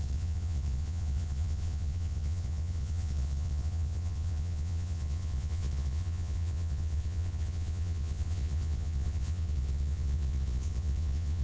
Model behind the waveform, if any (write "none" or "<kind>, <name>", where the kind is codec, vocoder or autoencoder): vocoder, Vocos